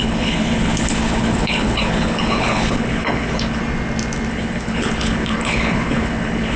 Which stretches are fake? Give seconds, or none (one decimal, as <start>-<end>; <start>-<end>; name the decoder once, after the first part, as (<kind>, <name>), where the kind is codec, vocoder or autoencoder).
0.0-3.6 (codec, HILCodec); 4.3-6.6